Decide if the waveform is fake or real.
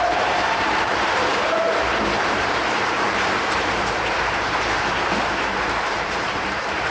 fake